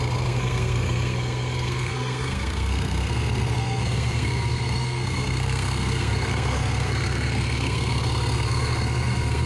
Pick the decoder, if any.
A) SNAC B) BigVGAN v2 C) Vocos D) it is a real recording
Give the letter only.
A